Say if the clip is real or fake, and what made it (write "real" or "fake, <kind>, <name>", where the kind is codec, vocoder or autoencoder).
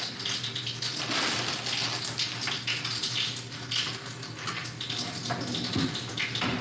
real